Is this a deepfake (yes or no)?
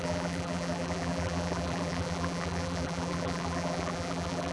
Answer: yes